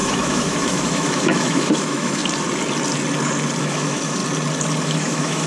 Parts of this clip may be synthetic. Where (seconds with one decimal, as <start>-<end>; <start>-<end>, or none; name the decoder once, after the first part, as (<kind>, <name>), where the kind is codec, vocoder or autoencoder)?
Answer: 0.0-2.2 (autoencoder, DAC-VAE); 3.6-4.2; 4.8-5.5